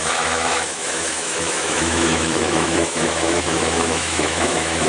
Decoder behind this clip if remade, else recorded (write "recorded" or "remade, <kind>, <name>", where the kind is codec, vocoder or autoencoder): remade, autoencoder, DAC-VAE